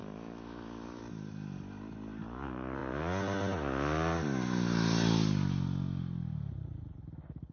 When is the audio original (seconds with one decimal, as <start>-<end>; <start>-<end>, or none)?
1.0-7.5

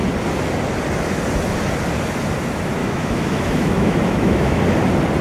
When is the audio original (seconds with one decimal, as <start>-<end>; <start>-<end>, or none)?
0.0-2.8; 4.6-5.2

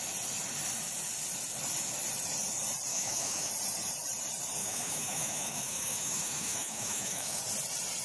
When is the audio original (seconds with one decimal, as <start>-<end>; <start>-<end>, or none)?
0.0-2.9; 3.5-4.6; 7.4-8.0

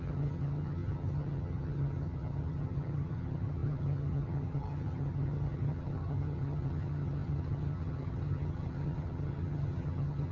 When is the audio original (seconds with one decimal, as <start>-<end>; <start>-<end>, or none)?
none

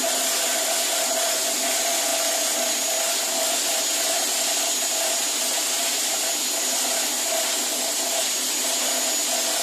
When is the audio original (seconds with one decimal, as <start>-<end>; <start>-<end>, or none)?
0.0-9.6

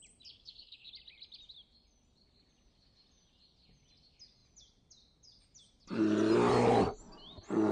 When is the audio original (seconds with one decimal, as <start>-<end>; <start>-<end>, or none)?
0.0-0.4; 0.9-7.7

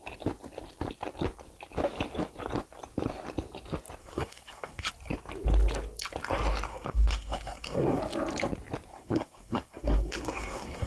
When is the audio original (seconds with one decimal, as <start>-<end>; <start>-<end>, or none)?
0.0-4.0; 4.9-6.7; 8.0-8.9

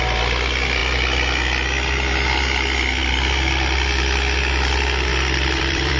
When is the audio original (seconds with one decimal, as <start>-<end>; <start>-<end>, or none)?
0.0-5.1